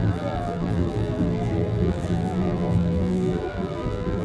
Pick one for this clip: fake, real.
fake